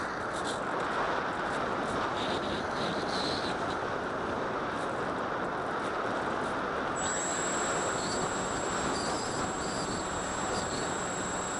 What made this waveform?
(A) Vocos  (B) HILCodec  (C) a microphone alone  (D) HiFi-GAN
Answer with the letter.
C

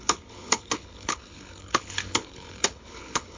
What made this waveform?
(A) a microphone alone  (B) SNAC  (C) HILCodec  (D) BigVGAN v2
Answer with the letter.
C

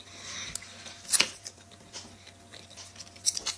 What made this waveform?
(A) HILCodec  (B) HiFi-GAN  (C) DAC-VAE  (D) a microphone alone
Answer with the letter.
D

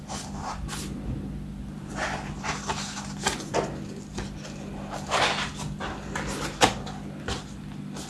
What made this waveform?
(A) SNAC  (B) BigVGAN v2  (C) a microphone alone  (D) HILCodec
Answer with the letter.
C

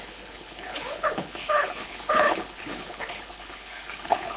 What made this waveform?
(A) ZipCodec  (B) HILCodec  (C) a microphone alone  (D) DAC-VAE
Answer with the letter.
B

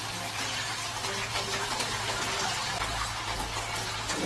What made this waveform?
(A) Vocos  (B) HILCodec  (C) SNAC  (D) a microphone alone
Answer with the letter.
D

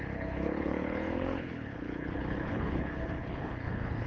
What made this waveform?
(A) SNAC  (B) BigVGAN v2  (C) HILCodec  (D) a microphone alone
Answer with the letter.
C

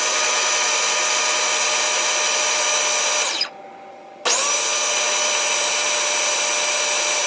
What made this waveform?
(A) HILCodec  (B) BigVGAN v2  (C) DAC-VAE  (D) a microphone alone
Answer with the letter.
D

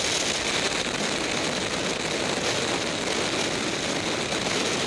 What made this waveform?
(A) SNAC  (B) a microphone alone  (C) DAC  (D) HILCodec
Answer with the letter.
B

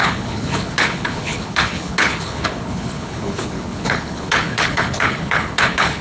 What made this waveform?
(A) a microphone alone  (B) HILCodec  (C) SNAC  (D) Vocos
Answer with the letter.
B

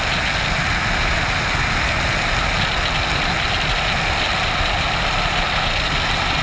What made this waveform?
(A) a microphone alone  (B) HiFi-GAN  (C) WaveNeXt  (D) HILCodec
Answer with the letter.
A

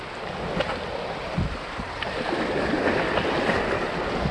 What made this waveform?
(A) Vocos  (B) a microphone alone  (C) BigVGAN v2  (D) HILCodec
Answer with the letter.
B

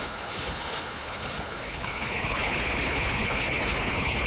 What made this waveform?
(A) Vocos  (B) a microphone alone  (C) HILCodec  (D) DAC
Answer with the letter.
C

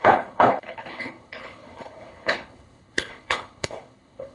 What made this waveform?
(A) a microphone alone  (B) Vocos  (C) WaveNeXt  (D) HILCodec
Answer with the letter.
D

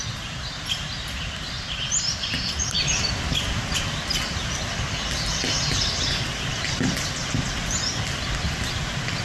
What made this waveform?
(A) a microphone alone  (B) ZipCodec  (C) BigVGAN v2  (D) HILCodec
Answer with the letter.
A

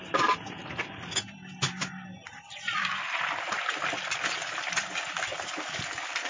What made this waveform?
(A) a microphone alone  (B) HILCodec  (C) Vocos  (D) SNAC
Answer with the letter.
A